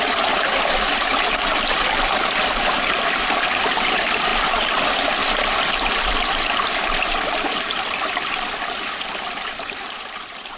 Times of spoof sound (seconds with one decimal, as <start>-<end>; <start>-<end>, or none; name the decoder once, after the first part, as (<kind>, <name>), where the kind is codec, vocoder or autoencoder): 0.0-1.5 (vocoder, BigVGAN v2); 2.9-4.3; 9.2-10.6

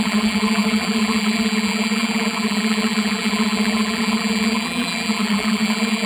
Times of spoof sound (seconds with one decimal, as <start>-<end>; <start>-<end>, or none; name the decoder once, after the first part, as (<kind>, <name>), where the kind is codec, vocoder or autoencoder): 0.0-6.1 (vocoder, BigVGAN v2)

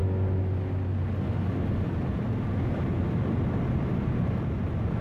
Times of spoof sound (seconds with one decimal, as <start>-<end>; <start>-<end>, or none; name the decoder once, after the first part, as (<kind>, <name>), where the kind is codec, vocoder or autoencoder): none

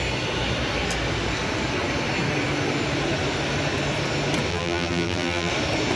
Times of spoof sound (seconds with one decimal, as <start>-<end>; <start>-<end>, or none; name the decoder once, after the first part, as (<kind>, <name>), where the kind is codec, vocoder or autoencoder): 4.5-5.5 (vocoder, BigVGAN v2)

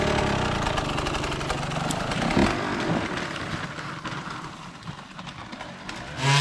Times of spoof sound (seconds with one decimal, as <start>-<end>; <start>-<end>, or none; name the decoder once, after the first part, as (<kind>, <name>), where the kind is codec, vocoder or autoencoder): none